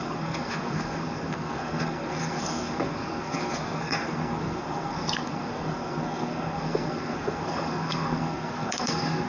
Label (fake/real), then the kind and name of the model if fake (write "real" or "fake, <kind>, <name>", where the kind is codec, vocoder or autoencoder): fake, codec, SNAC